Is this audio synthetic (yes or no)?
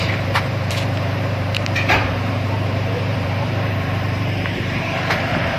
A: yes